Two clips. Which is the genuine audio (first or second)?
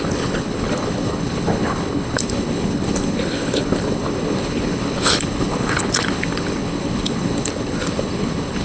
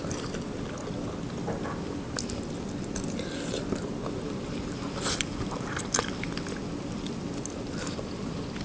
second